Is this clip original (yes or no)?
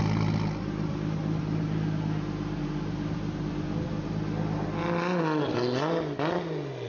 yes